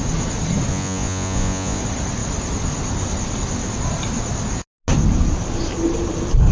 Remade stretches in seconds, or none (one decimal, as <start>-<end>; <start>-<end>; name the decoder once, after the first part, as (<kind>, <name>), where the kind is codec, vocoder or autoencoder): 0.7-1.8 (vocoder, Vocos)